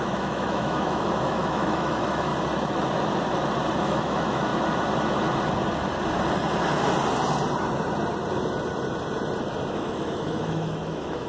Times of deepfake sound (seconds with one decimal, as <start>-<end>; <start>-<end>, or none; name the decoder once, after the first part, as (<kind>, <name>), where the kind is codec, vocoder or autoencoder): 0.0-2.3 (autoencoder, DAC-VAE); 3.8-4.5; 9.7-11.3